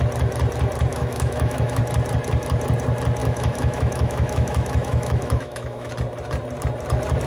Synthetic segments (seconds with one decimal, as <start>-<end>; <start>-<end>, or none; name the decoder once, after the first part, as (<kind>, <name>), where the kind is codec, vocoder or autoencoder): 0.9-1.8 (autoencoder, DAC-VAE); 3.2-5.9